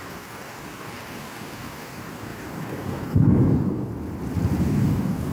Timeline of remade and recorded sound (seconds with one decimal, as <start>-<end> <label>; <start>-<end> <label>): 0.0-3.9 remade; 3.9-4.6 recorded; 4.6-5.3 remade